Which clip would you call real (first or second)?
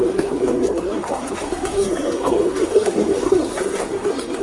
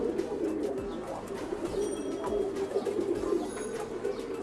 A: second